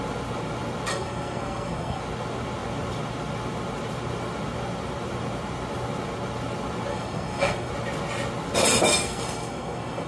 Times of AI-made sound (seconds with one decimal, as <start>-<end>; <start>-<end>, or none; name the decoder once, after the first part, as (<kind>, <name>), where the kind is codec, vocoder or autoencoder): 0.9-2.0 (codec, SNAC); 6.9-7.7; 8.9-10.1